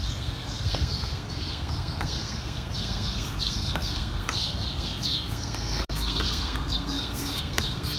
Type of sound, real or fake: fake